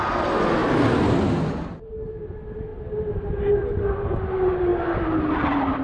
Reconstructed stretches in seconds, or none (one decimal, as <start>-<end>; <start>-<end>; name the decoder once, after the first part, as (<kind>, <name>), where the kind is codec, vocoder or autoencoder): none